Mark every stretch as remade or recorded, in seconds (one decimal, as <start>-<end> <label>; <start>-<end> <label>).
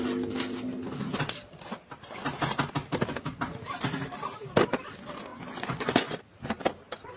0.0-5.3 recorded; 5.3-6.2 remade; 6.2-7.2 recorded